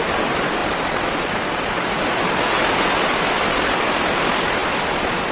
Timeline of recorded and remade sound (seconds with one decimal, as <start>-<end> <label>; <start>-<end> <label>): 0.0-5.3 recorded